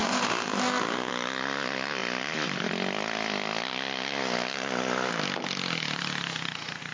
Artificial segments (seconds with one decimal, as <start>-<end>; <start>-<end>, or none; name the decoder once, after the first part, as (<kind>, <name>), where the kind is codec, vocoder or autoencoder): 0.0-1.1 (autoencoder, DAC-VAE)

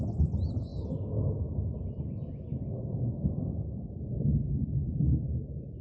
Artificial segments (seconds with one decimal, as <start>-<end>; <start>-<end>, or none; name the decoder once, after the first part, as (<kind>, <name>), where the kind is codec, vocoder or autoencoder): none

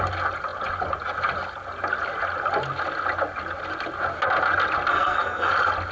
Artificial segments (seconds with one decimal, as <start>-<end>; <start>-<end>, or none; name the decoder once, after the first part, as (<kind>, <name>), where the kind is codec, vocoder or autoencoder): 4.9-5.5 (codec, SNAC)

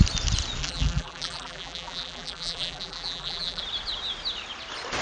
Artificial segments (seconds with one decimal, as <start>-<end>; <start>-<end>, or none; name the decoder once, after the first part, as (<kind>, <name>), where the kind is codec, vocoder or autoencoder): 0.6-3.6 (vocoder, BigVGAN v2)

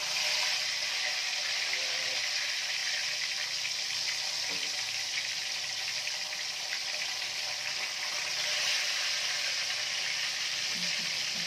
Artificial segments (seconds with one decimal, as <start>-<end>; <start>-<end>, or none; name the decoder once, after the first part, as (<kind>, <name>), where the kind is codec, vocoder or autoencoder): 0.0-2.8 (vocoder, BigVGAN v2); 4.6-8.3; 10.0-11.5

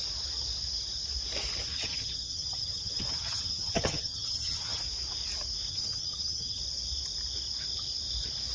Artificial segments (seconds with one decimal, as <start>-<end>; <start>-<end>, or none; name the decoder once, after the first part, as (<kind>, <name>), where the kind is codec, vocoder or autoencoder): 1.7-4.8 (vocoder, HiFi-GAN); 5.7-6.6

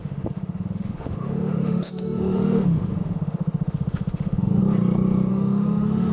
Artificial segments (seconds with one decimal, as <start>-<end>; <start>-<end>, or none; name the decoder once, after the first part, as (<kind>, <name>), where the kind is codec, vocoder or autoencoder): 0.0-4.6 (autoencoder, DAC-VAE); 5.3-6.1

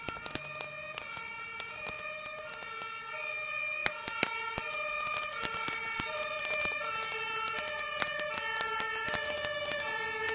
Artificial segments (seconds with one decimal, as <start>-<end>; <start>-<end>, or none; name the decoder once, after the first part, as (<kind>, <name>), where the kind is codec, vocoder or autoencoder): 1.3-1.9 (vocoder, BigVGAN v2); 5.8-6.9